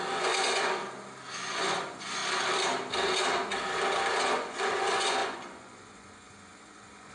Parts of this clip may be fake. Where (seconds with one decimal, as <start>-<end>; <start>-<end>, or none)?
0.0-0.8; 1.4-2.2; 4.2-7.1